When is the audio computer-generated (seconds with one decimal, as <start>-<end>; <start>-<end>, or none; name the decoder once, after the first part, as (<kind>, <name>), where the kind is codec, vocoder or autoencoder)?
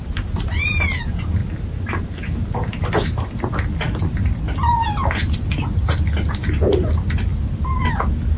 1.4-2.4 (vocoder, BigVGAN v2)